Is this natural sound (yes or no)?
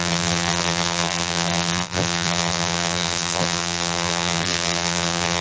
no